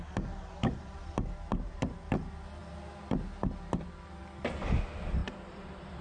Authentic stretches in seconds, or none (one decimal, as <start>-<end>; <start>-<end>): 0.0-0.6; 1.8-5.2